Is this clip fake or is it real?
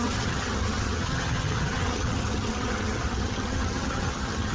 fake